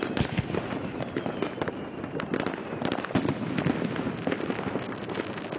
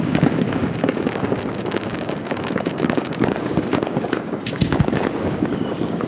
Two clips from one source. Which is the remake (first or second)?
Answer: second